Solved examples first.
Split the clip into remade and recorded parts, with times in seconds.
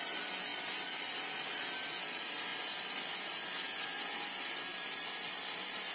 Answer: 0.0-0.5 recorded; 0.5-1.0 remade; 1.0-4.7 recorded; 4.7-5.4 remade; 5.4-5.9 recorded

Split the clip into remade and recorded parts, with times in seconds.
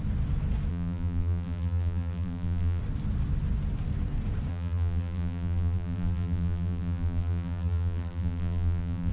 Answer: 0.0-0.7 recorded; 0.7-2.8 remade; 2.8-4.5 recorded; 4.5-9.1 remade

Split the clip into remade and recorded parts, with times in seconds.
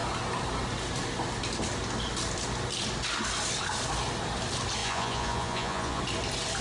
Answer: 0.0-4.8 recorded; 4.8-6.0 remade; 6.0-6.6 recorded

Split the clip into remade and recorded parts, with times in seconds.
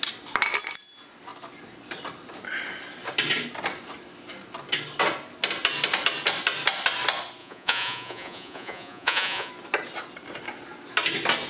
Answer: 0.0-7.4 recorded; 7.4-9.5 remade; 9.5-11.5 recorded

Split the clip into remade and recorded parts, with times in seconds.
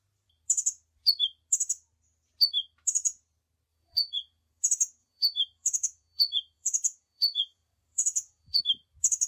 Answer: 0.0-3.7 recorded; 3.7-4.6 remade; 4.6-5.0 recorded; 5.0-8.6 remade; 8.6-9.3 recorded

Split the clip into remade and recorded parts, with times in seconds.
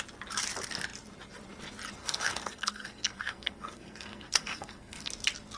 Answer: 0.0-2.0 recorded; 2.0-5.1 remade; 5.1-5.6 recorded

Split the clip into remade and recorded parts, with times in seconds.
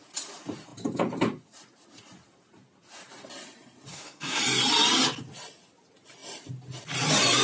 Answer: 0.0-3.9 recorded; 3.9-4.4 remade; 4.4-7.4 recorded